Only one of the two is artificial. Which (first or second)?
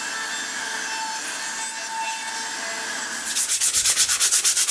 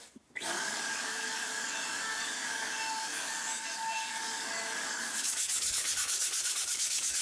second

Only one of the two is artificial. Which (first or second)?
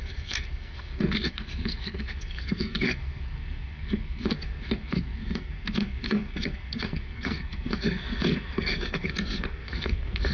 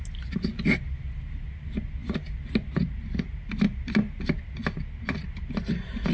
first